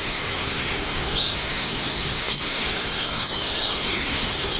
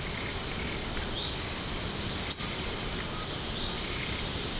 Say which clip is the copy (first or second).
first